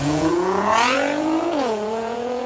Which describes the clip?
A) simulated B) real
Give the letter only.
A